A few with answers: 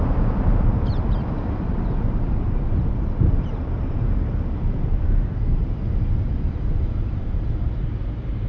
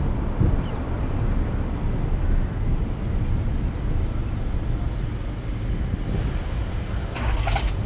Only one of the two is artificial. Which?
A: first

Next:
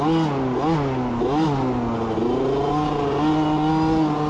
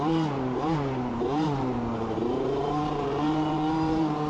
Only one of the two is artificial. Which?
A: second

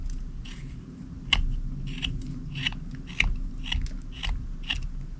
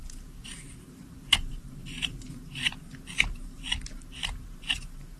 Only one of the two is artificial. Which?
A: second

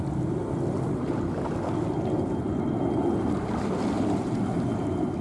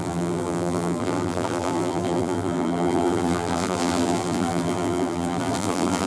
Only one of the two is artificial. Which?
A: second